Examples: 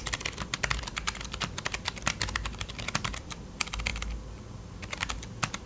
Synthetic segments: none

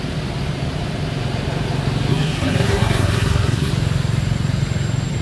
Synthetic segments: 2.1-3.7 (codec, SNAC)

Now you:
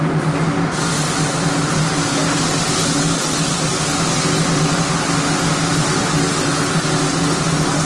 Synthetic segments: none